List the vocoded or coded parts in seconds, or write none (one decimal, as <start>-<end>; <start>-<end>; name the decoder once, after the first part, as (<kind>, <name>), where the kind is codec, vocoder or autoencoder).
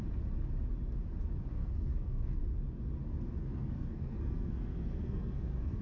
1.5-2.4 (codec, SNAC); 3.4-5.8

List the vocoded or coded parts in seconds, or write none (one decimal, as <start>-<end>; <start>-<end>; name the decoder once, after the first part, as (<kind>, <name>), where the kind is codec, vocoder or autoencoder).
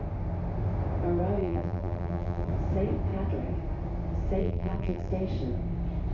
1.4-2.5 (vocoder, BigVGAN v2); 4.4-5.1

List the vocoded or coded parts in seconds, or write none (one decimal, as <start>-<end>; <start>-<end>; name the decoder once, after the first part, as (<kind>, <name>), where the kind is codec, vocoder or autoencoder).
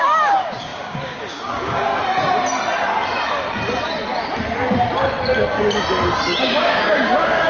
0.0-1.9 (codec, DAC); 6.4-7.5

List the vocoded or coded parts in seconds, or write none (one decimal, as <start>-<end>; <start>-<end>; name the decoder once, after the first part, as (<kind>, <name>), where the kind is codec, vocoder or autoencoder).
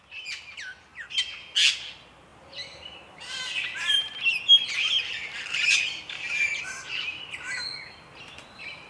2.3-6.6 (vocoder, BigVGAN v2)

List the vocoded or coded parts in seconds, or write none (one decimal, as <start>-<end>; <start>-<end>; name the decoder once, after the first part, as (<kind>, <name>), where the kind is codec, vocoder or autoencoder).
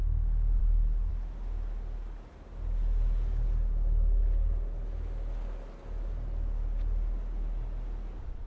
none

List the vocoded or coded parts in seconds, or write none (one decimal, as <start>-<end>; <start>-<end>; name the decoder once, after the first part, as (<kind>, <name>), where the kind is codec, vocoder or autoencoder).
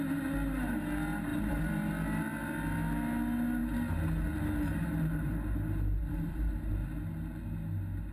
1.3-1.9 (vocoder, BigVGAN v2); 6.0-6.7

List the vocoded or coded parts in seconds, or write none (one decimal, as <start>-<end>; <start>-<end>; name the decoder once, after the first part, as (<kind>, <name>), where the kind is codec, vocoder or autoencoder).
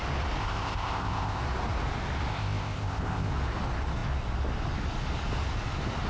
0.4-1.4 (codec, ZipCodec); 2.3-3.3